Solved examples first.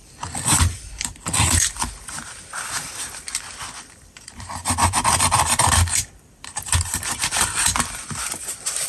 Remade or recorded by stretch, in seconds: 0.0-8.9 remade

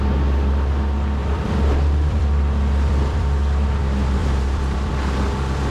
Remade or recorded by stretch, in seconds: 0.0-1.2 recorded; 1.2-3.8 remade; 3.8-4.2 recorded; 4.2-4.9 remade; 4.9-5.7 recorded

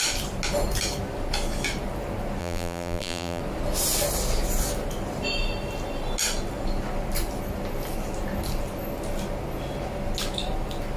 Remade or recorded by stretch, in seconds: 0.0-2.4 recorded; 2.4-3.4 remade; 3.4-11.0 recorded

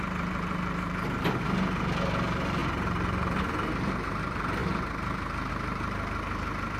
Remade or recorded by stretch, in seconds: 0.0-6.8 remade